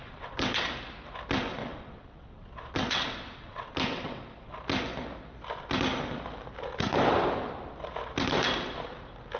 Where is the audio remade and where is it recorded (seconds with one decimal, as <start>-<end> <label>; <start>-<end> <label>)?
0.0-0.7 remade; 0.7-1.6 recorded; 1.6-4.5 remade; 4.5-9.4 recorded